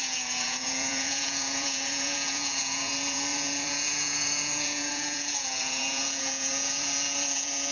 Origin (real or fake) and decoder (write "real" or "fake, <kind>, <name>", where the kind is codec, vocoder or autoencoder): fake, vocoder, Vocos